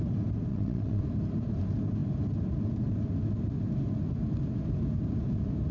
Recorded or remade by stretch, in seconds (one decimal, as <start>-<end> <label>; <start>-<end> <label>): 0.0-0.5 recorded; 0.5-1.0 remade; 1.0-5.7 recorded